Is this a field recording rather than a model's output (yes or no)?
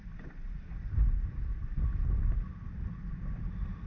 yes